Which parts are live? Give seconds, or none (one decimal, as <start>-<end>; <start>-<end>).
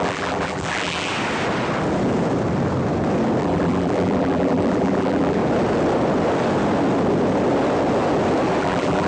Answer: 1.1-3.4; 5.4-8.6